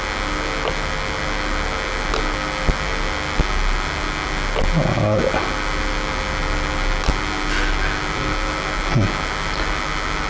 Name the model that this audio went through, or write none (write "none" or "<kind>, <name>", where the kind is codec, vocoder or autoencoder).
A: none